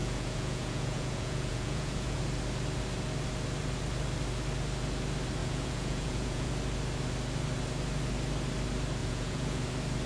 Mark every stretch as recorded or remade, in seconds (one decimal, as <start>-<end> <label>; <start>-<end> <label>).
0.0-2.2 remade; 2.2-5.4 recorded; 5.4-6.5 remade; 6.5-9.0 recorded; 9.0-9.6 remade; 9.6-10.1 recorded